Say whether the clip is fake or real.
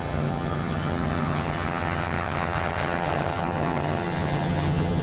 fake